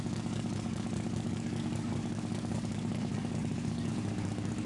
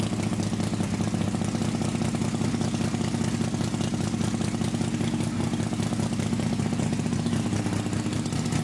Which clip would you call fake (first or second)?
first